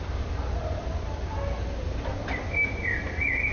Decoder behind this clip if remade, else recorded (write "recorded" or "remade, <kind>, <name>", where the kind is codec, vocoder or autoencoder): recorded